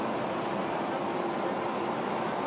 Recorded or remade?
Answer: recorded